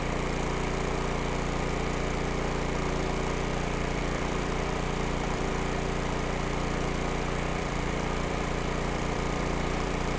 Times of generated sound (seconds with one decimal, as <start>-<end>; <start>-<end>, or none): 3.5-5.5; 7.5-10.2

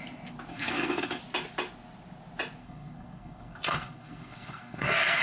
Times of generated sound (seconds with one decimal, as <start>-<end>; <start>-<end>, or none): 0.5-1.2; 2.6-5.2

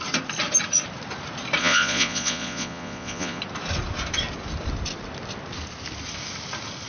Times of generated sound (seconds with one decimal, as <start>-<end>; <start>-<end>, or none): 1.6-3.4